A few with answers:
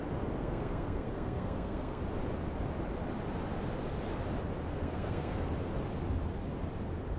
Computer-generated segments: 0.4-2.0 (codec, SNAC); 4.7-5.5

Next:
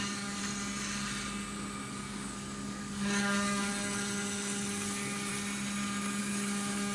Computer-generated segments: 0.0-0.4 (codec, DAC); 1.9-3.7; 4.7-5.3; 6.2-6.9